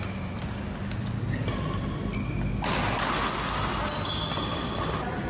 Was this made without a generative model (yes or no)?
yes